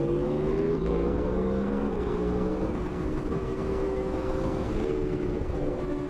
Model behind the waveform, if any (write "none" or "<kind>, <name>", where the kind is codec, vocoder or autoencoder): codec, SNAC